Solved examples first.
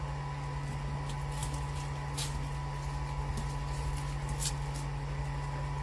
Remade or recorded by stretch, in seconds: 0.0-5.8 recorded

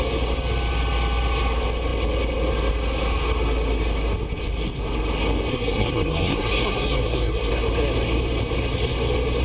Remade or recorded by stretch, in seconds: 0.0-5.5 recorded; 5.5-7.5 remade; 7.5-9.4 recorded

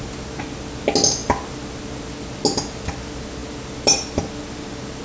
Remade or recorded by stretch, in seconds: 0.0-5.0 recorded

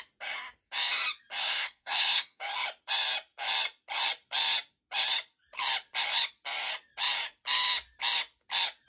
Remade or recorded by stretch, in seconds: 0.0-1.4 recorded; 1.4-2.4 remade; 2.4-8.9 recorded

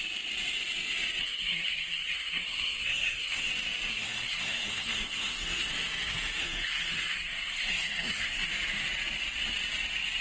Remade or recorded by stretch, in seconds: 0.0-1.2 recorded; 1.2-3.5 remade; 3.5-3.9 recorded; 3.9-5.7 remade; 5.7-6.4 recorded; 6.4-8.5 remade; 8.5-10.2 recorded

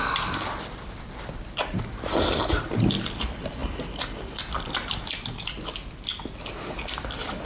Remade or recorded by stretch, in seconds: 0.0-7.5 recorded

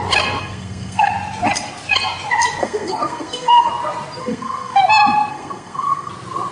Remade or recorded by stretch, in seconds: 0.0-0.4 recorded; 0.4-1.1 remade; 1.1-2.6 recorded; 2.6-3.7 remade; 3.7-4.2 recorded; 4.2-4.8 remade; 4.8-5.3 recorded; 5.3-6.1 remade; 6.1-6.5 recorded

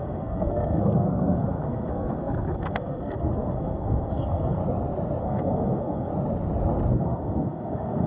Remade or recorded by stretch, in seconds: 0.0-4.6 remade; 4.6-5.2 recorded; 5.2-6.1 remade; 6.1-6.9 recorded; 6.9-8.1 remade